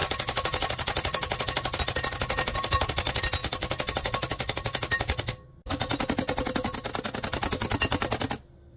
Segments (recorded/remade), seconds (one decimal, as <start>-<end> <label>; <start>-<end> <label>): 0.0-8.8 recorded